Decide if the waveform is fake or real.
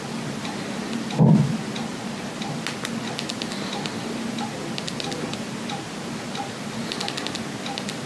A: real